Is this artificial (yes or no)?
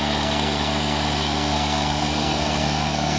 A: yes